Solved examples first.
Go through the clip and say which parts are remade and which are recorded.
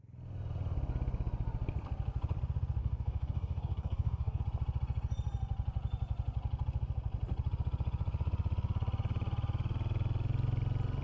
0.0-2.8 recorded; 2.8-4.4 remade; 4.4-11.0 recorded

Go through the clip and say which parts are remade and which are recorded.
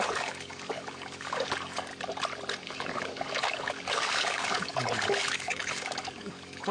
0.0-1.9 remade; 1.9-2.6 recorded; 2.6-6.7 remade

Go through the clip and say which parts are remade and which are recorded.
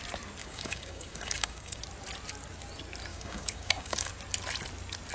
0.0-0.4 recorded; 0.4-1.8 remade; 1.8-3.1 recorded; 3.1-4.1 remade; 4.1-5.1 recorded